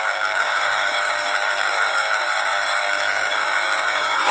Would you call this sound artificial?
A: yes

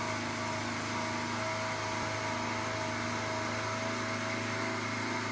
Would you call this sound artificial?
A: no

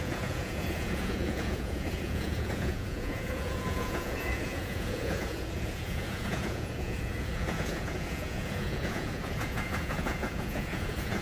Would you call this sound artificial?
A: yes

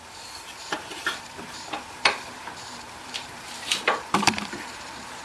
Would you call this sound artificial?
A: yes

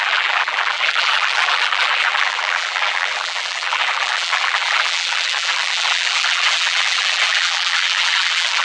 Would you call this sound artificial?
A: yes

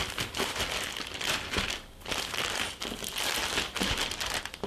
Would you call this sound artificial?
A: no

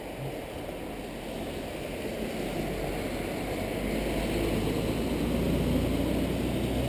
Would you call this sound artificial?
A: no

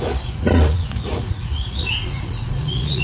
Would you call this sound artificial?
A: yes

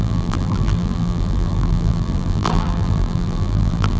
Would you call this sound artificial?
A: yes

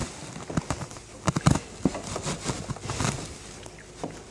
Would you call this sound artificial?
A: no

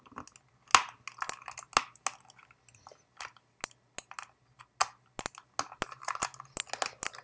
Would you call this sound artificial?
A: no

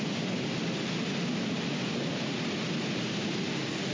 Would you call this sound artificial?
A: no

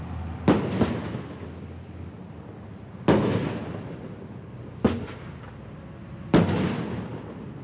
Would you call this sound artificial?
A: no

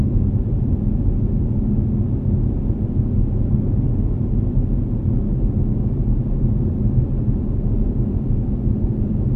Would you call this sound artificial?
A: no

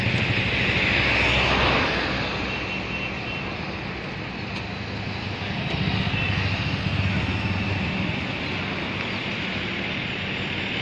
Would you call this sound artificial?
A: no